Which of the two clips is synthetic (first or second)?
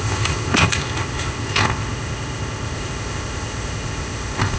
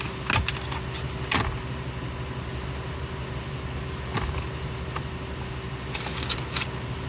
first